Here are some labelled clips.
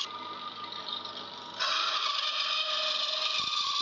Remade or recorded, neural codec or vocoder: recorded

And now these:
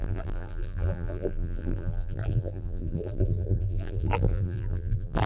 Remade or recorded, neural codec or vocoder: remade, vocoder, BigVGAN v2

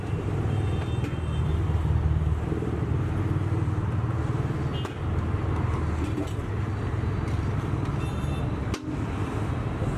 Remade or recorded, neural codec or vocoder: recorded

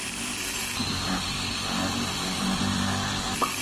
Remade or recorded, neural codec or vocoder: remade, vocoder, BigVGAN v2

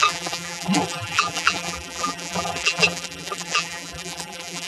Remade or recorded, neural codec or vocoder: remade, vocoder, BigVGAN v2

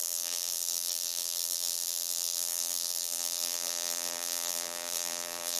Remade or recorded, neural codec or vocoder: remade, vocoder, BigVGAN v2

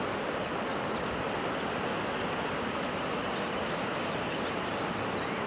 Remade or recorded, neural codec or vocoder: recorded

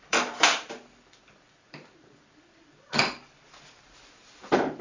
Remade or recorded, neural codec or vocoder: remade, vocoder, BigVGAN v2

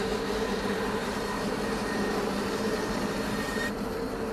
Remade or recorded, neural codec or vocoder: remade, vocoder, BigVGAN v2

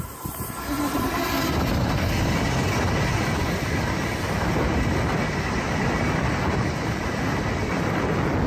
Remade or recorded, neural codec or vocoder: recorded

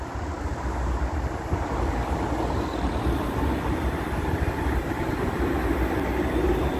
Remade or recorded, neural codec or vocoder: recorded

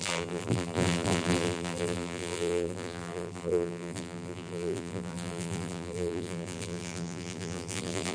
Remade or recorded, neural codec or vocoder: remade, vocoder, BigVGAN v2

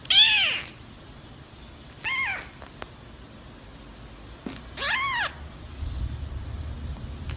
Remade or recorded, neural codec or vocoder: recorded